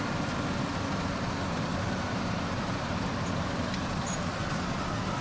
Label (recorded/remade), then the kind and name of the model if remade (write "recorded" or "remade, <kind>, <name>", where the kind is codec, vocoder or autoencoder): remade, vocoder, BigVGAN v2